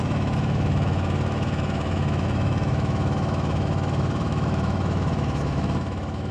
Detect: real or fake fake